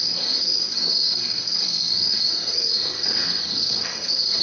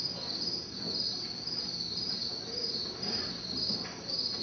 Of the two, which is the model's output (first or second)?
first